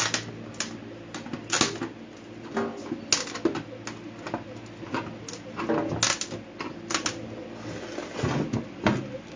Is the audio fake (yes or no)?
no